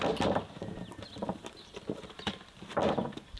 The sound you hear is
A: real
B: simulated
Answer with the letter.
A